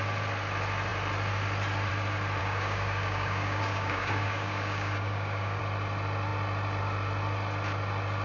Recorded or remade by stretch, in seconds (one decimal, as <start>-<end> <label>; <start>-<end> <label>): 0.0-2.4 recorded; 2.4-5.6 remade; 5.6-8.2 recorded